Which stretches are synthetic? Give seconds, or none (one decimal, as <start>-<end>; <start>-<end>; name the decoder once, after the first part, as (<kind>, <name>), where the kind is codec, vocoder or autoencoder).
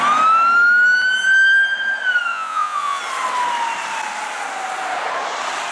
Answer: 2.3-3.0 (vocoder, Vocos)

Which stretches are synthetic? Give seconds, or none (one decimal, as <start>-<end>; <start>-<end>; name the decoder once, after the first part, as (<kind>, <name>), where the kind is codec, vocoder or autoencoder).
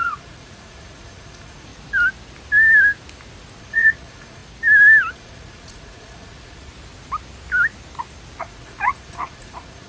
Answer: 0.0-1.7 (vocoder, Vocos); 3.6-4.4; 5.1-6.7; 8.4-9.9